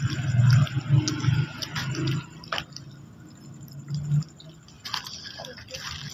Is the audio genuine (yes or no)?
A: yes